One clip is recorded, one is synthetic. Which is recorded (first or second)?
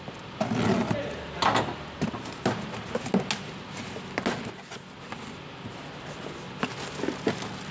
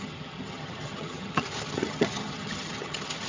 first